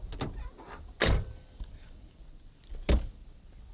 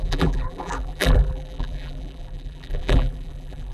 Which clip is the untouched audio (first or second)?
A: first